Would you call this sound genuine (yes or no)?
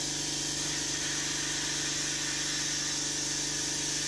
yes